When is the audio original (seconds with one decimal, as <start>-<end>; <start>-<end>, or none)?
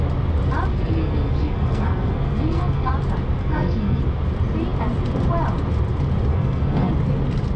0.0-0.7; 2.9-3.4; 4.0-6.3; 6.9-7.6